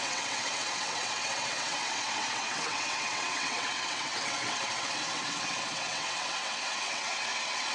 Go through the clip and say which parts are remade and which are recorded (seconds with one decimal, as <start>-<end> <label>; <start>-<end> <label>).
0.0-7.7 remade